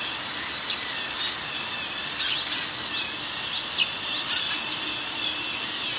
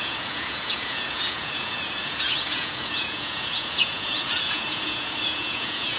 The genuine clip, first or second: first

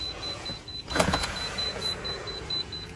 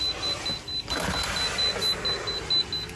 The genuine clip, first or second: second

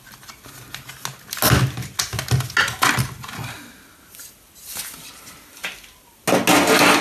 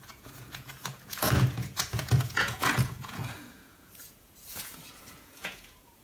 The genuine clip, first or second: first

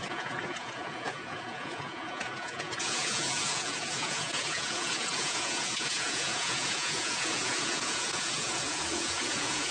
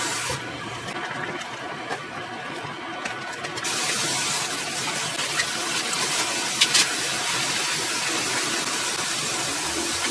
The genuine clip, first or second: second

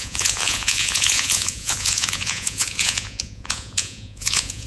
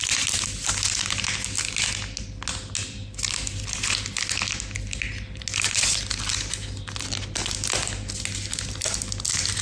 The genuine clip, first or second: second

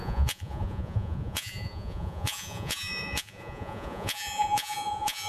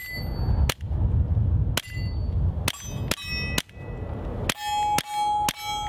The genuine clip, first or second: second